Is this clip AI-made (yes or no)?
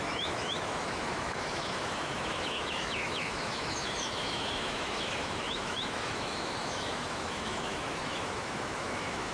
yes